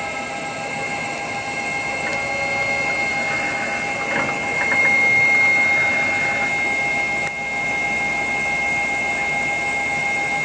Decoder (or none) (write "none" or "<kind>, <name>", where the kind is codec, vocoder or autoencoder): none